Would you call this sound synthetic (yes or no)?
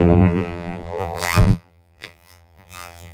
yes